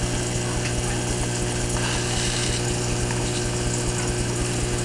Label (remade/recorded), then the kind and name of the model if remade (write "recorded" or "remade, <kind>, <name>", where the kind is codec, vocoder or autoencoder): recorded